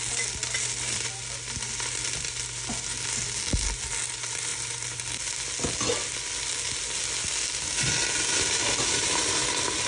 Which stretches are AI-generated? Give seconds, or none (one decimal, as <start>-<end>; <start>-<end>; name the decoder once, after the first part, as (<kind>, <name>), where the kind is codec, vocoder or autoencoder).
none